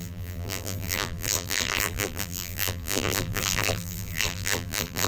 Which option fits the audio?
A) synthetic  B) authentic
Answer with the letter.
A